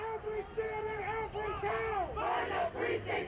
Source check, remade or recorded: recorded